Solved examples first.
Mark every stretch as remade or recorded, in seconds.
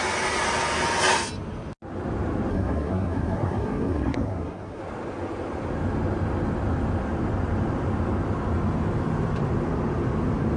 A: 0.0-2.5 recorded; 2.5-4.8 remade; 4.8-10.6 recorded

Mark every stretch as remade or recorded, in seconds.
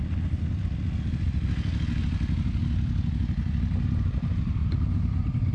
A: 0.0-5.5 recorded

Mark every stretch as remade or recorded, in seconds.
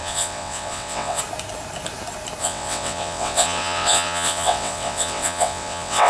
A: 0.0-1.2 remade; 1.2-2.4 recorded; 2.4-6.1 remade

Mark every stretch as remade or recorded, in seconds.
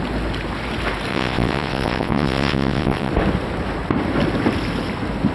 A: 0.0-1.1 recorded; 1.1-3.1 remade; 3.1-5.3 recorded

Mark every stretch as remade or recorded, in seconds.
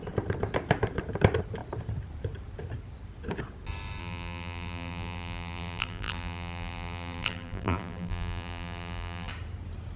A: 0.0-4.0 recorded; 4.0-9.3 remade; 9.3-10.0 recorded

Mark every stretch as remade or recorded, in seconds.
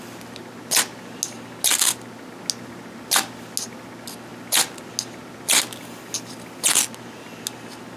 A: 0.0-8.0 recorded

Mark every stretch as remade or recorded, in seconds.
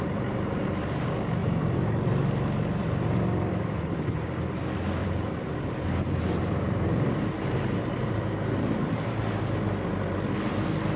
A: 0.0-1.4 recorded; 1.4-1.9 remade; 1.9-2.8 recorded; 2.8-4.6 remade; 4.6-5.0 recorded; 5.0-9.2 remade; 9.2-11.0 recorded